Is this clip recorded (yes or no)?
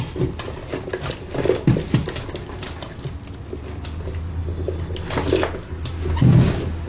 yes